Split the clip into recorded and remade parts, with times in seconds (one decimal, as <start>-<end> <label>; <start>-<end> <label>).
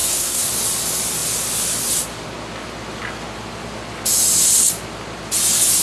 0.0-0.5 remade; 0.5-5.8 recorded